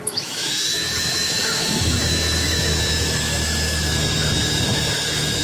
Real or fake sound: fake